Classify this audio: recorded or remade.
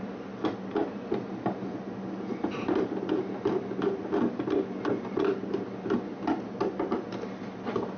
recorded